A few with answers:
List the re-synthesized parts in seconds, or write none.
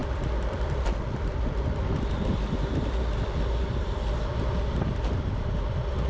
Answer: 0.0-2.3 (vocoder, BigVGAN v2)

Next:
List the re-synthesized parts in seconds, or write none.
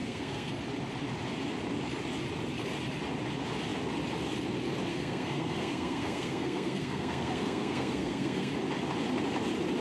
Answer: 0.0-0.5 (codec, SNAC); 4.9-8.5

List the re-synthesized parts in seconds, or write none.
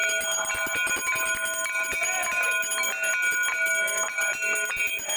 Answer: none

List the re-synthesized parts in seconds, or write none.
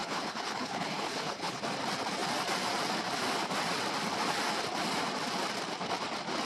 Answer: 0.0-1.6 (codec, HILCodec)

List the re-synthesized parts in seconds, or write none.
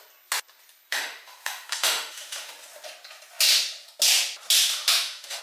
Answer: 0.9-2.5 (autoencoder, DAC-VAE); 4.7-5.4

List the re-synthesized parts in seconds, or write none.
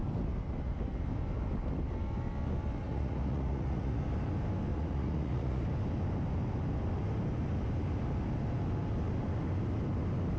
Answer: 2.8-4.0 (vocoder, Vocos); 4.7-5.6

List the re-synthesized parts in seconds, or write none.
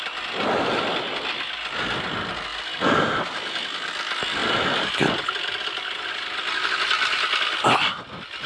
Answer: none